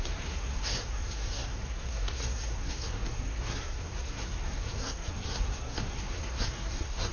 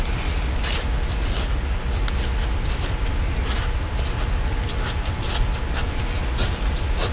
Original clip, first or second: second